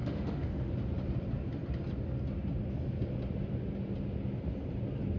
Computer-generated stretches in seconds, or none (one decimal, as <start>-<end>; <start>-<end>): 0.0-0.7